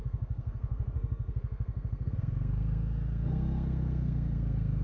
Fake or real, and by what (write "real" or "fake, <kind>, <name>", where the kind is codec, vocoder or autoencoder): fake, codec, SNAC